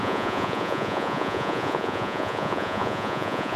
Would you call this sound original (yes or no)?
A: no